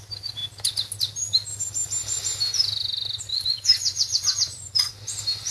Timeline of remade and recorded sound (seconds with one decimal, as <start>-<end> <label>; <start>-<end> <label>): 0.0-3.3 recorded; 3.3-4.9 remade; 4.9-5.5 recorded